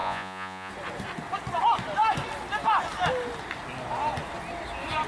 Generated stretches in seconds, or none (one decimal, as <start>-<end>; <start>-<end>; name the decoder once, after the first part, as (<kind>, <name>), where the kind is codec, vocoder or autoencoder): 0.0-0.7 (vocoder, Vocos)